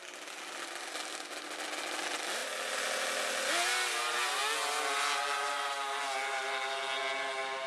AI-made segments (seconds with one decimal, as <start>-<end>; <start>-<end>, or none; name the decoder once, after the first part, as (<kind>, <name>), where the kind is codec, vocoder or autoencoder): none